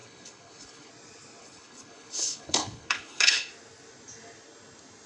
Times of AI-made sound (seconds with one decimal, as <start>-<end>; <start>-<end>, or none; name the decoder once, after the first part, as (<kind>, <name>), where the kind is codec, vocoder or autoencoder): 0.0-0.9 (codec, HILCodec); 1.4-3.5